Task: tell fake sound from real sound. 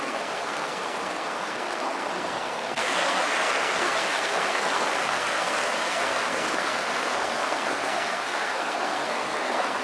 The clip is fake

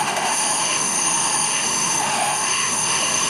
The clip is fake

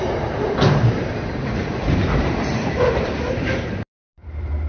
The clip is fake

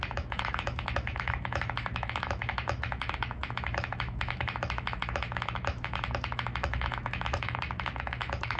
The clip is fake